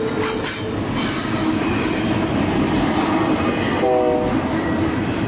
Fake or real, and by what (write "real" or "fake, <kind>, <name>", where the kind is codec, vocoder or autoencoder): real